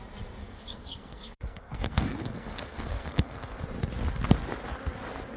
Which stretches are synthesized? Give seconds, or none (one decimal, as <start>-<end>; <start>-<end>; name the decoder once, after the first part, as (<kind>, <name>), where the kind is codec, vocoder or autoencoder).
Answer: 0.4-3.6 (codec, SNAC)